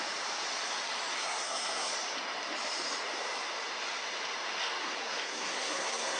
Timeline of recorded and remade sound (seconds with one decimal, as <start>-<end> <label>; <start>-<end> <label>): 0.0-1.2 recorded; 1.2-1.9 remade; 1.9-4.8 recorded; 4.8-6.2 remade